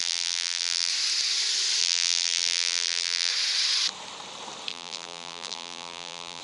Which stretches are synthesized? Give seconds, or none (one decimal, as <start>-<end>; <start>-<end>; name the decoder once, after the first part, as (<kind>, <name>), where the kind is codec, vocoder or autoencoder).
0.0-0.9 (vocoder, BigVGAN v2); 1.8-3.3; 4.7-6.4